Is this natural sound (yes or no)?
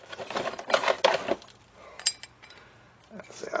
yes